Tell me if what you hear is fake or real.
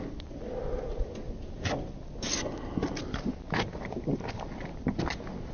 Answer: real